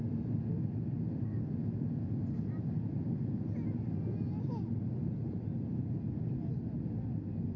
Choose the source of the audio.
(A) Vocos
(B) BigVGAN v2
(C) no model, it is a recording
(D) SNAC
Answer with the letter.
C